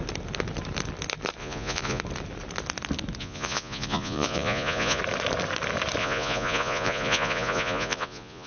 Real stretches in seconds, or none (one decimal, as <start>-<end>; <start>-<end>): 0.0-1.4; 2.0-3.2; 5.0-6.0